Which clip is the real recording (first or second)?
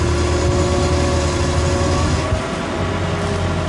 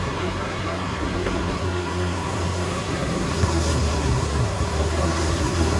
first